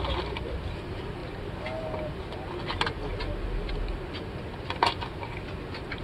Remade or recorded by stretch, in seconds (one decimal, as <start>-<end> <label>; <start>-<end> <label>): 0.0-6.0 recorded